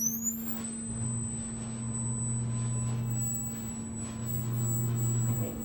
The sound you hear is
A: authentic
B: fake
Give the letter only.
A